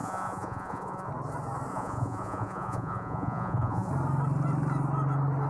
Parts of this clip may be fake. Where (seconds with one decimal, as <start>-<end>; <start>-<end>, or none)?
0.0-1.1; 1.7-3.9